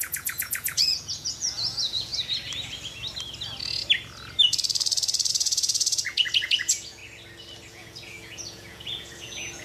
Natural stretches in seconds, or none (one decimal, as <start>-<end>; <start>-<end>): 2.1-5.3; 7.0-7.7